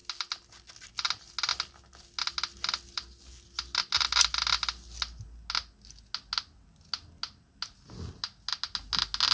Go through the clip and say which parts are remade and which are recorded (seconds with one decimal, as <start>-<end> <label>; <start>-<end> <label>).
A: 0.0-9.3 recorded